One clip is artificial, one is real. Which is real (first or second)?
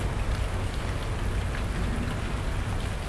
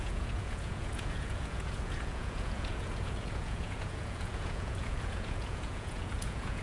first